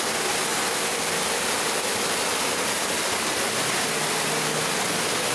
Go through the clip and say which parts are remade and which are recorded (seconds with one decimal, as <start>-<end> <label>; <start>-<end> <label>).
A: 0.0-5.3 recorded